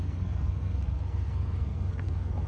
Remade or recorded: remade